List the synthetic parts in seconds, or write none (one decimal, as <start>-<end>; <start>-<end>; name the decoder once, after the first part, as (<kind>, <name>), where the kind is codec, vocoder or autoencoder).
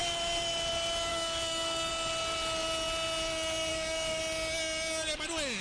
1.1-1.9 (codec, DAC); 3.7-4.2